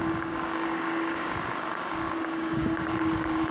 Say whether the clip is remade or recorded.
remade